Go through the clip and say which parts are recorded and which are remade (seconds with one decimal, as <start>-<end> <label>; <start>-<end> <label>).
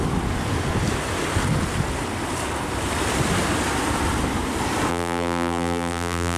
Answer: 0.0-4.9 recorded; 4.9-6.4 remade